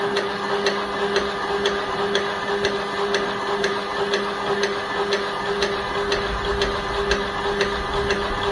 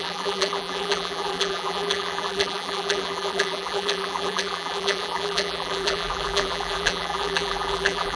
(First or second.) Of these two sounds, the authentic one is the first